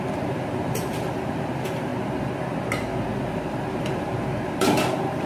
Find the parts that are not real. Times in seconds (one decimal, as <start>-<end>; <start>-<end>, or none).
0.0-1.9; 3.1-5.3

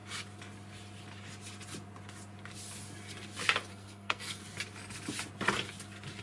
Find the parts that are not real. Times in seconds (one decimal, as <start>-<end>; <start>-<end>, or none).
3.7-4.4

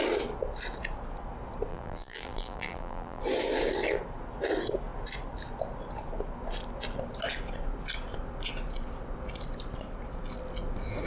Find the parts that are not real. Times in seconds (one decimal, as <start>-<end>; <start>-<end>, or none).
1.7-3.2

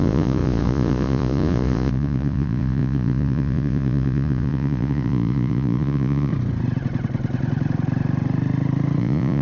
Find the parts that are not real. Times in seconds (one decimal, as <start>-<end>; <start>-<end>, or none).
0.0-6.3; 9.0-9.4